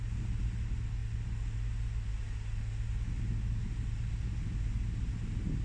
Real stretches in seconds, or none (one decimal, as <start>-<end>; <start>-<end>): 0.0-5.6